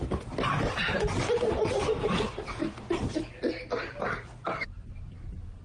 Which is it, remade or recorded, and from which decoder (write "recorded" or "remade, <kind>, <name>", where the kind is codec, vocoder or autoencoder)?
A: recorded